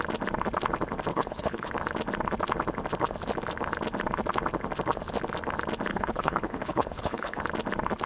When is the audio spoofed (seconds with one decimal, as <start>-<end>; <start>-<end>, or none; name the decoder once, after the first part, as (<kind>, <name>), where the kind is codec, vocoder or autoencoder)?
1.1-1.7 (codec, HILCodec); 5.9-7.4